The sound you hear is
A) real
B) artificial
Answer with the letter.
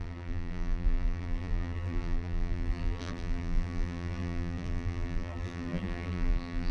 B